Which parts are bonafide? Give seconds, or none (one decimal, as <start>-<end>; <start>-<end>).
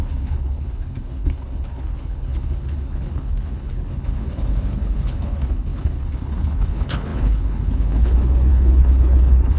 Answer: none